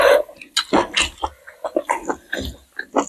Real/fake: real